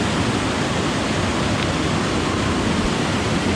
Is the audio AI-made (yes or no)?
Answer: no